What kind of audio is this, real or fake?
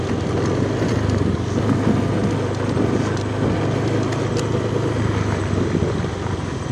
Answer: real